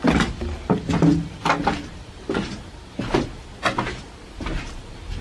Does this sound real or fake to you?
real